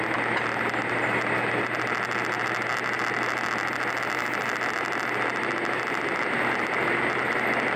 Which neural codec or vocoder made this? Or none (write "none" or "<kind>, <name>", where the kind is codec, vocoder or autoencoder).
none